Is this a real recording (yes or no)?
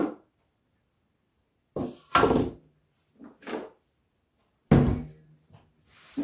yes